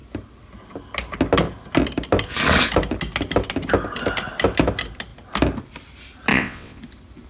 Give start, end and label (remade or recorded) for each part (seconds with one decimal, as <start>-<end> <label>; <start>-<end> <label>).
0.0-6.3 recorded; 6.3-6.8 remade; 6.8-7.3 recorded